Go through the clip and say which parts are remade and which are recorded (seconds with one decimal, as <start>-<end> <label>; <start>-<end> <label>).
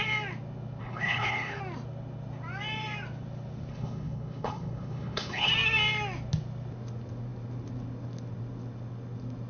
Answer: 0.0-0.8 recorded; 0.8-1.6 remade; 1.6-3.7 recorded; 3.7-5.5 remade; 5.5-9.5 recorded